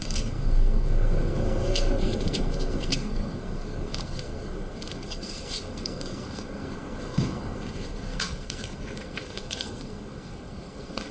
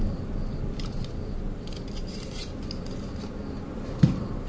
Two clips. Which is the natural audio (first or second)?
second